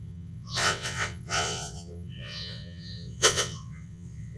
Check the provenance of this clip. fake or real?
fake